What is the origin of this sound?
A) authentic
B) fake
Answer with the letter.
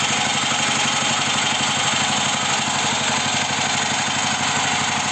A